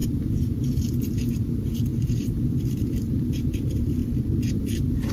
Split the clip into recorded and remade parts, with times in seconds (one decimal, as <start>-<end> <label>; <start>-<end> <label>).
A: 0.0-4.0 remade; 4.0-4.5 recorded; 4.5-5.1 remade